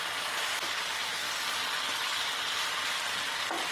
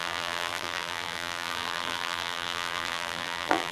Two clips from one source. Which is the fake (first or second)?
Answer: second